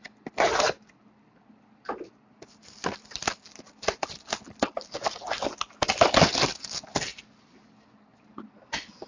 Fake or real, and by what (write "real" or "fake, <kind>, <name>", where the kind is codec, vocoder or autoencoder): real